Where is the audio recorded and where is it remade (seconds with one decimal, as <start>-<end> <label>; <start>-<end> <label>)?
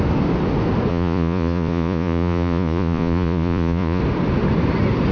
0.0-0.9 recorded; 0.9-4.0 remade; 4.0-5.1 recorded